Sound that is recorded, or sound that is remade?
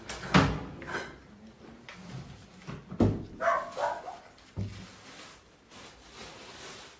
recorded